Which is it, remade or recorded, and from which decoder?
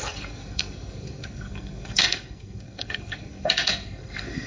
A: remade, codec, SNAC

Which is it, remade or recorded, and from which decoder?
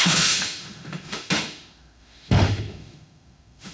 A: remade, autoencoder, DAC-VAE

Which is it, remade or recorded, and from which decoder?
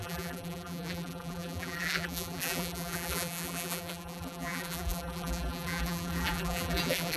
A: remade, vocoder, BigVGAN v2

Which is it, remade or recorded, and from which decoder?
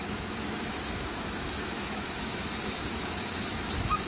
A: remade, autoencoder, DAC-VAE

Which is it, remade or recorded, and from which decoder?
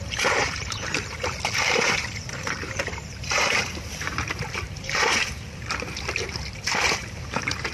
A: remade, vocoder, BigVGAN v2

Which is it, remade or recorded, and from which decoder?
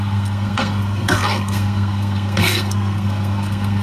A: remade, codec, SNAC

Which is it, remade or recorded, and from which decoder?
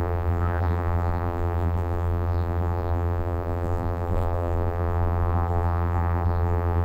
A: remade, vocoder, BigVGAN v2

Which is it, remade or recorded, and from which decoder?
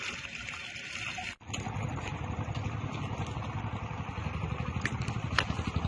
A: recorded